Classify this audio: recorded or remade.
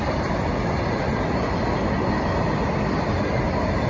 recorded